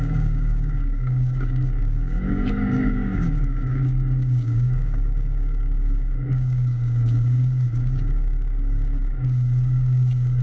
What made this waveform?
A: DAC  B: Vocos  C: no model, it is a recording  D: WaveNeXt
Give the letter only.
A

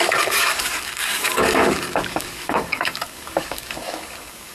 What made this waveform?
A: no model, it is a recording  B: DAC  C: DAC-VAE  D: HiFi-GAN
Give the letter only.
B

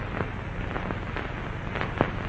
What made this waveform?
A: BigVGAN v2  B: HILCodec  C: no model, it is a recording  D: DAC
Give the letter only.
C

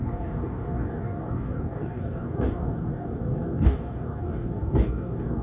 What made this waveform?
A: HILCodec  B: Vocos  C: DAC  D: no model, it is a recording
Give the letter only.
C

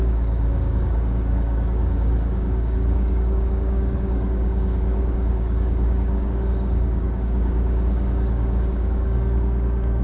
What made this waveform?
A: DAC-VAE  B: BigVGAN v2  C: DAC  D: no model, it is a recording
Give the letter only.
C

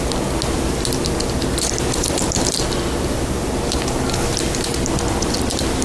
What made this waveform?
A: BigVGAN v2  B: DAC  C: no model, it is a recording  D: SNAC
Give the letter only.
C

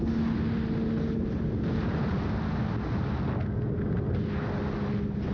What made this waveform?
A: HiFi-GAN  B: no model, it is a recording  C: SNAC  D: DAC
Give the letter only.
B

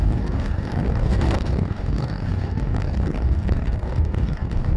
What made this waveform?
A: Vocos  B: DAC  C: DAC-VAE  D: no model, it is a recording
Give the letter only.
B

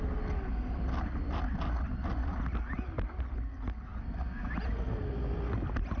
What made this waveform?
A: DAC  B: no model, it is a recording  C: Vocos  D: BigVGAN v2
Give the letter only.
B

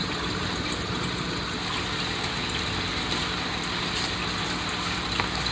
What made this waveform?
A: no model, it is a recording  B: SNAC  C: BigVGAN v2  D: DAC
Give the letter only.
A